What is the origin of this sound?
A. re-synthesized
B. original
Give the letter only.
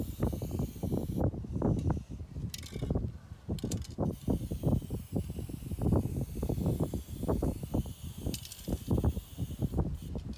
B